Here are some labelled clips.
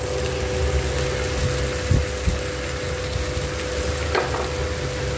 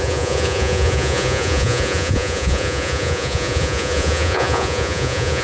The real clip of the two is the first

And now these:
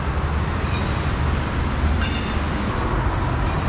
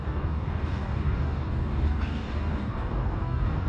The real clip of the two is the first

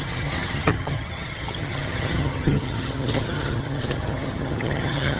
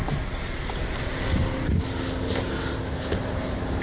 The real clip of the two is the second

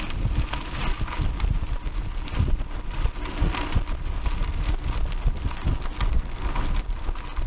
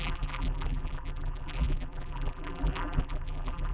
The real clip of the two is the first